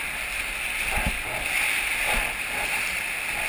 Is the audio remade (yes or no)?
no